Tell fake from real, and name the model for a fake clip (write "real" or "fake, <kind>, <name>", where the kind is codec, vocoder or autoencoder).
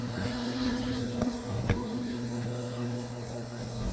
fake, codec, SNAC